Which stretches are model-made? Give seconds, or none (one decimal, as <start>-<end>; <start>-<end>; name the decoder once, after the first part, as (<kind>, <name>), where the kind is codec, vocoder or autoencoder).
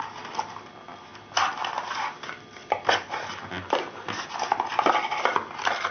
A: none